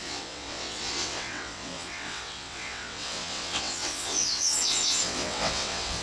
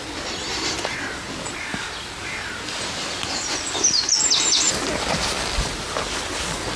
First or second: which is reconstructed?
first